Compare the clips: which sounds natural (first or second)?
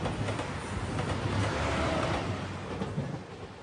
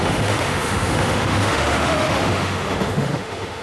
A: first